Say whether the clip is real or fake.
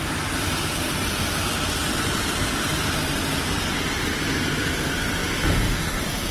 real